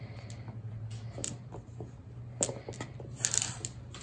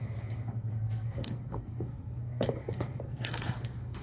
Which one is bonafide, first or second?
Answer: first